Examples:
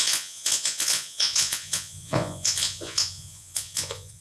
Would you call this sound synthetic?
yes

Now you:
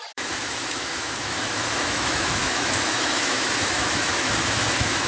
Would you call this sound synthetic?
yes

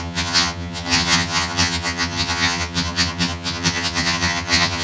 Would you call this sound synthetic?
yes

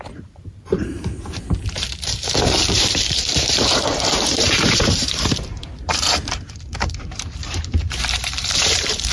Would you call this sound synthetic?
yes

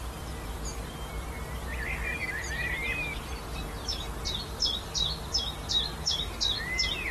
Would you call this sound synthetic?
no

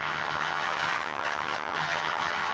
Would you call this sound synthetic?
yes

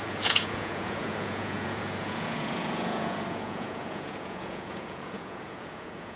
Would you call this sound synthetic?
yes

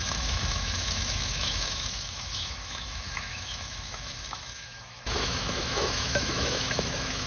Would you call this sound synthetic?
yes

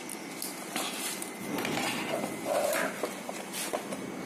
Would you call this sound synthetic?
no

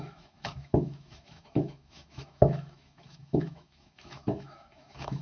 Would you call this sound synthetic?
yes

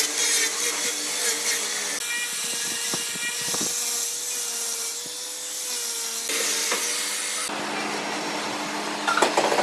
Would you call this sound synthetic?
no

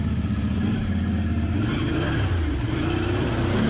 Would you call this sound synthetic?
no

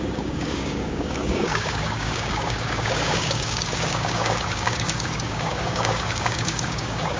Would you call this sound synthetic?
yes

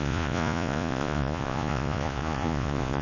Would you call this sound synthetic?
yes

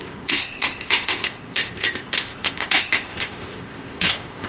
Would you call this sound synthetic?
yes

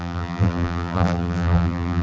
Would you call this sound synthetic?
yes